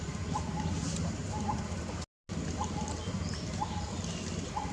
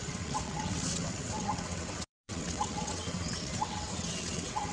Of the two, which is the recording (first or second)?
first